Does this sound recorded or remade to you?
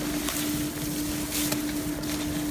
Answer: recorded